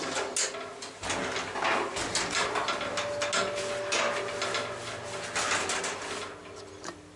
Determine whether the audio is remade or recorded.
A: recorded